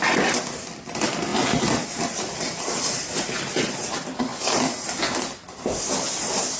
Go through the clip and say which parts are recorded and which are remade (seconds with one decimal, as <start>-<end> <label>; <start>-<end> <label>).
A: 0.0-6.6 recorded